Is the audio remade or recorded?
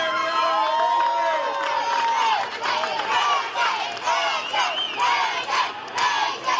recorded